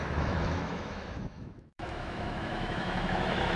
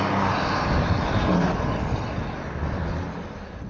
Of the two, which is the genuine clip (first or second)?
second